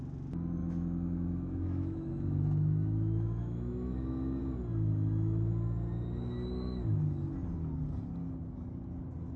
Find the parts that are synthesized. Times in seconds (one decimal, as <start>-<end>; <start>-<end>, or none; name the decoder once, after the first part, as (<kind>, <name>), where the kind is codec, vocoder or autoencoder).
0.6-4.4 (autoencoder, DAC-VAE)